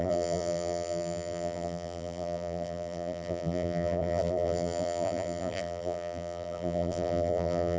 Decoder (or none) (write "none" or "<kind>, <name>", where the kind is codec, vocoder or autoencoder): vocoder, BigVGAN v2